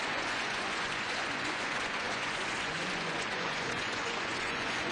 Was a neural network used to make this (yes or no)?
yes